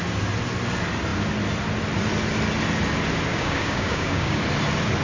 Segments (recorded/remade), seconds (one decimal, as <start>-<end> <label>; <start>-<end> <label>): 0.0-3.3 recorded; 3.3-4.4 remade; 4.4-5.0 recorded